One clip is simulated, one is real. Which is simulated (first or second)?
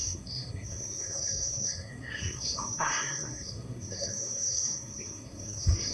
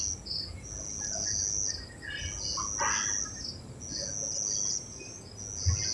first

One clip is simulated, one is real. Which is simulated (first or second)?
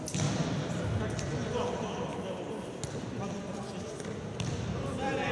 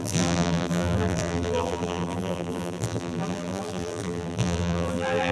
second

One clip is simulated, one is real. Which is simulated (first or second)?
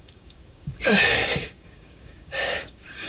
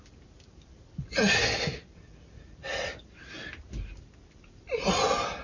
first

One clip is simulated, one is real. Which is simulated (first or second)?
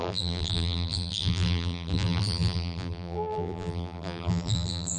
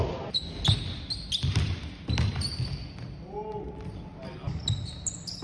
first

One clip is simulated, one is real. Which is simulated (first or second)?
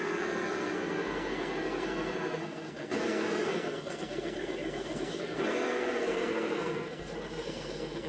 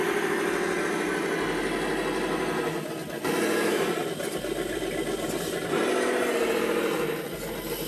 first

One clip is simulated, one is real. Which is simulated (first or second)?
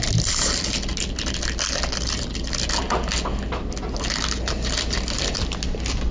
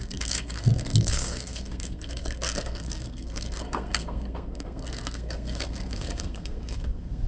second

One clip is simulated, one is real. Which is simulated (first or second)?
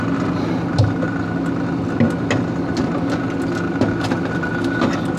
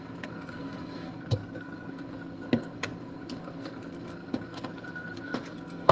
second